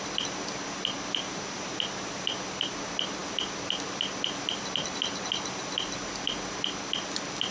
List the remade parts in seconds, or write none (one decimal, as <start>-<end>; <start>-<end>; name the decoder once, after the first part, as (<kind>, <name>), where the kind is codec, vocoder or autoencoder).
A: none